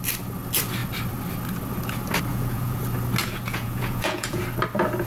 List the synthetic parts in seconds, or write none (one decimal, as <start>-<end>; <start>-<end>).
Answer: 2.3-2.8; 3.2-4.4

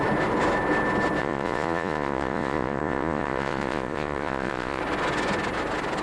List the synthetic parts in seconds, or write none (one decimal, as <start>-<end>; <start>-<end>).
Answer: 1.2-4.8

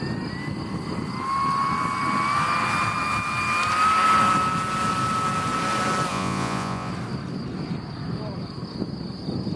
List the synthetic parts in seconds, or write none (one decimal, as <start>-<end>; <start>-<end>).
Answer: 6.1-6.9

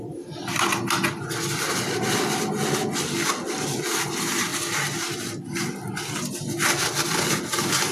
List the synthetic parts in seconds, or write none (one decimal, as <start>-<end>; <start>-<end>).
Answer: none

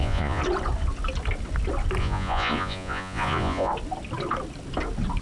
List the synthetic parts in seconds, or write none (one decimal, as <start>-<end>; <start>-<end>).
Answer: 0.0-0.4; 2.0-3.7